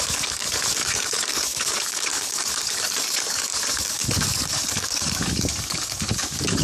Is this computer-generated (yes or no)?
yes